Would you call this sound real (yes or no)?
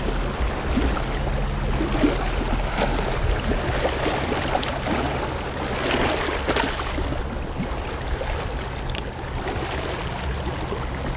yes